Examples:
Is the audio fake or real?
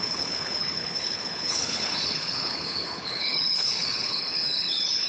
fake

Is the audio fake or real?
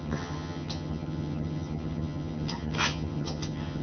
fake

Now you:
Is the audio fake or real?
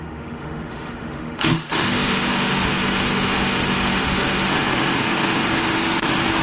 fake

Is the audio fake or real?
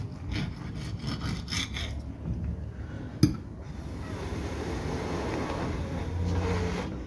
real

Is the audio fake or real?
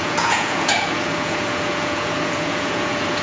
fake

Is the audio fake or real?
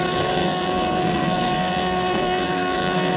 fake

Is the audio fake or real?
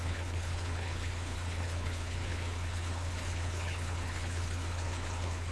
fake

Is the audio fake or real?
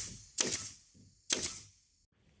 real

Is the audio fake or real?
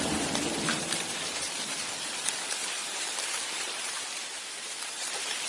fake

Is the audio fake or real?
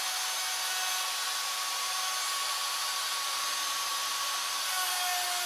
real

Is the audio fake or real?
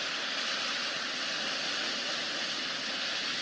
real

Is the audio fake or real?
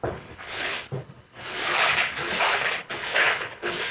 fake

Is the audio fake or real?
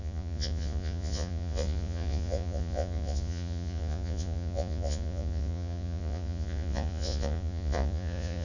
fake